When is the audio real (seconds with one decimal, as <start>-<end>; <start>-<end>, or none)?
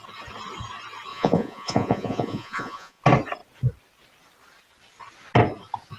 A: 0.0-1.1; 3.0-6.0